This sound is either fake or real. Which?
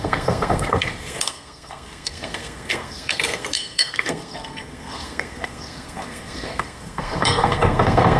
fake